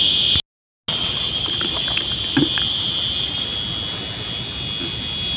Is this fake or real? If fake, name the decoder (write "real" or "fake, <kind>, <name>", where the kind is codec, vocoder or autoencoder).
real